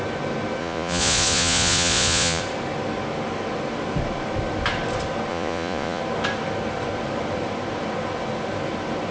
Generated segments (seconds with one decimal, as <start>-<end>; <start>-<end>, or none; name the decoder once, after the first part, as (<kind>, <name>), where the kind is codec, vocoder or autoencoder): 0.6-2.4 (vocoder, Vocos); 5.3-6.0